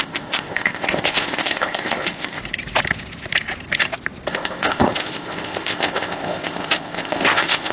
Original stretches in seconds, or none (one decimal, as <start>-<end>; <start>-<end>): 2.4-4.3